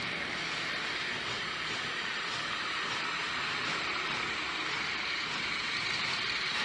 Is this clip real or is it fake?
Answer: fake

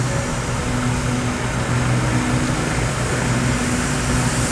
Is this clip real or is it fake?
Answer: real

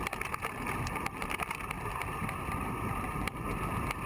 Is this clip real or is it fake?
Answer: real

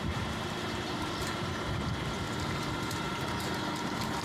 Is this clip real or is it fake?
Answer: fake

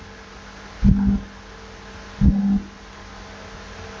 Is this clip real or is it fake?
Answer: real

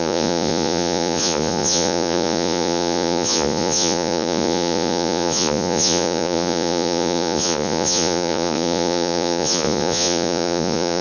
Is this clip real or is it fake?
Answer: fake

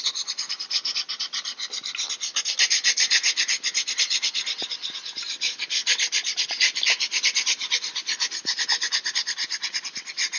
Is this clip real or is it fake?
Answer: real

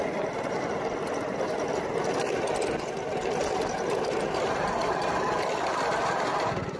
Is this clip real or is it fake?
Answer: real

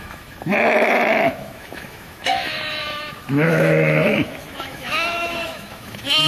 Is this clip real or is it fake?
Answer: fake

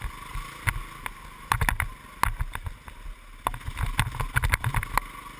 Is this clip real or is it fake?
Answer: real